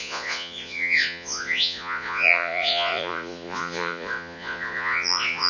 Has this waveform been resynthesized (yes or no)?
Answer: yes